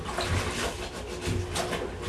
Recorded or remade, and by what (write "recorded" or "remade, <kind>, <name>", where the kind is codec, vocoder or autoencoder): recorded